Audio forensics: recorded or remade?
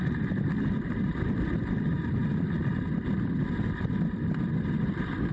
recorded